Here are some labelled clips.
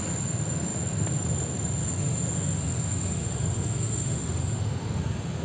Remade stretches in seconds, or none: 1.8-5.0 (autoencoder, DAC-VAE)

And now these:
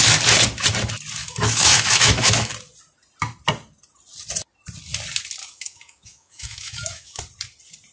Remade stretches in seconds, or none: 1.2-2.5 (autoencoder, DAC-VAE); 5.4-7.2

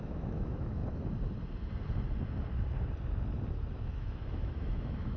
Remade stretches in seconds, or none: 0.0-0.8 (autoencoder, DAC-VAE); 3.9-5.2

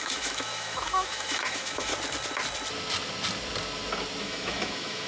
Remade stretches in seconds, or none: 0.0-1.9 (autoencoder, DAC-VAE); 4.2-5.1